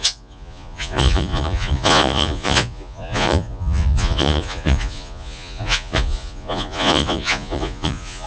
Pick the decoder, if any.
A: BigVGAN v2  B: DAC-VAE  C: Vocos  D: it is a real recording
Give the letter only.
C